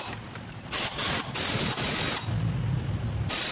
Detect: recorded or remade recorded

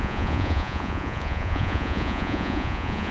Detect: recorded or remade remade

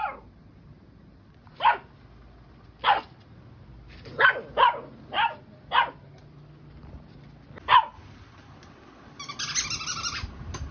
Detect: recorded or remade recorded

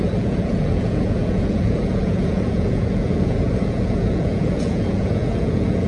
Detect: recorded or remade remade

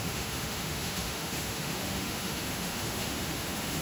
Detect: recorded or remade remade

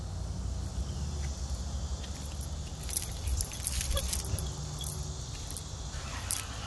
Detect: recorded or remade recorded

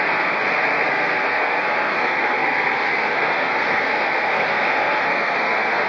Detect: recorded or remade remade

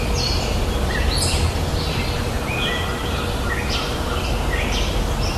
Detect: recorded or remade recorded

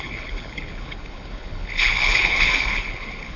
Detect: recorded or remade remade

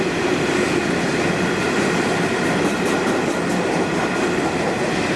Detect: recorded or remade recorded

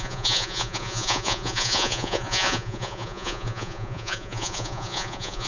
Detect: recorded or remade remade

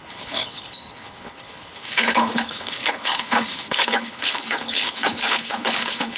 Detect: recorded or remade remade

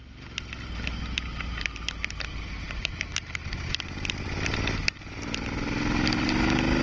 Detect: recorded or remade recorded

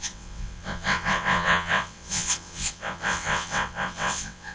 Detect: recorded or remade remade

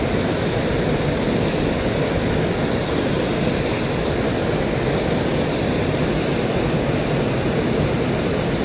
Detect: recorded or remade recorded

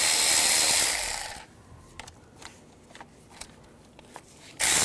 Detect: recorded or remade recorded